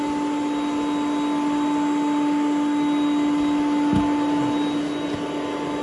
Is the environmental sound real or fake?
real